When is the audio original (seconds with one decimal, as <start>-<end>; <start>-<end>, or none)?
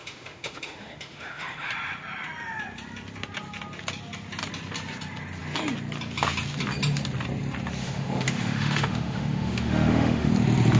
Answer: 1.7-7.8; 10.3-10.8